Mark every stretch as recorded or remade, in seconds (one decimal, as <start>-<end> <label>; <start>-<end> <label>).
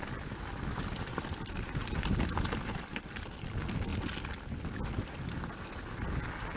0.0-6.6 recorded